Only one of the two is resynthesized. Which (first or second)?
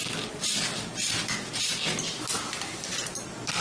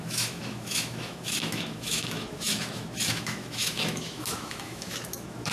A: second